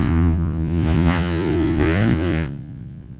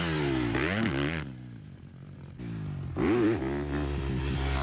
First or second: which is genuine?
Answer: second